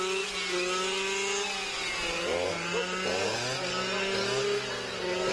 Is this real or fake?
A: real